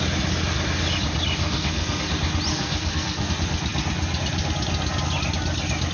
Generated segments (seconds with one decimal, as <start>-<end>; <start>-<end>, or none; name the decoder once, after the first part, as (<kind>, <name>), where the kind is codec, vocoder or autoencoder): 1.4-2.0 (codec, SNAC); 2.5-3.3